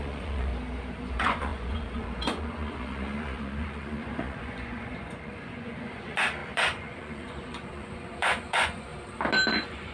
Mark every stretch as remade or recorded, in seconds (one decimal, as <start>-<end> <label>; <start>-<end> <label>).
0.0-0.5 remade; 0.5-1.1 recorded; 1.1-8.9 remade; 8.9-9.5 recorded; 9.5-9.9 remade